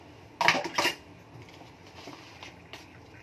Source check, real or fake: real